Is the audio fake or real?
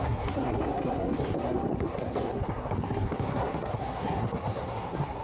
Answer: fake